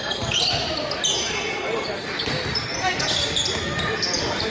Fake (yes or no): no